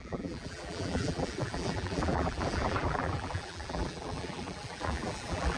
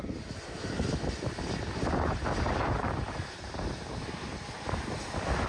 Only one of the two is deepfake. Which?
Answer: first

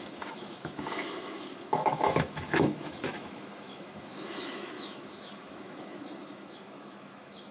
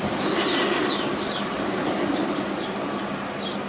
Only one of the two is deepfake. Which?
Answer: first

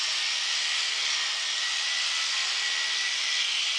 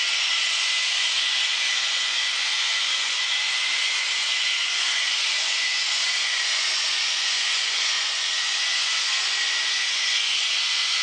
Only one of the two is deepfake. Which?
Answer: second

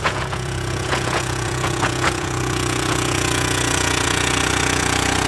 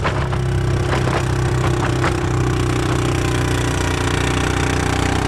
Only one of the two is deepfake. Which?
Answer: first